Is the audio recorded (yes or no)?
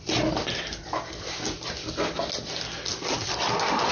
yes